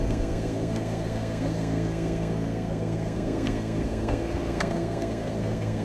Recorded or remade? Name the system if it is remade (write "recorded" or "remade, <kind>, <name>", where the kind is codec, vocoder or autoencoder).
remade, codec, SNAC